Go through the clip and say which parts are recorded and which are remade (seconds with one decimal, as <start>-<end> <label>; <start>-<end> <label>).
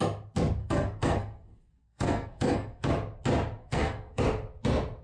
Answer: 0.0-0.6 recorded; 0.6-2.9 remade; 2.9-3.6 recorded; 3.6-4.2 remade; 4.2-5.0 recorded